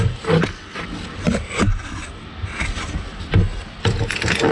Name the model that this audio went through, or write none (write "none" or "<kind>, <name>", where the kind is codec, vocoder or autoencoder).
none